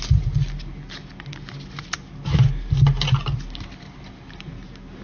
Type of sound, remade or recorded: recorded